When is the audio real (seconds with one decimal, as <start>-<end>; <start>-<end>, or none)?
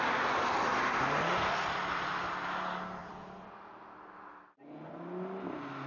0.0-5.9